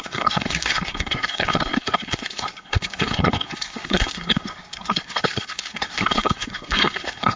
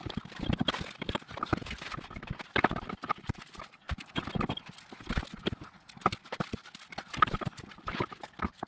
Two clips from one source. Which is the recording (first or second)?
second